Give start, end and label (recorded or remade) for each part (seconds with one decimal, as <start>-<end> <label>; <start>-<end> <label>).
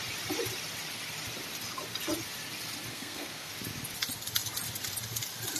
0.0-2.9 recorded; 2.9-3.5 remade; 3.5-5.6 recorded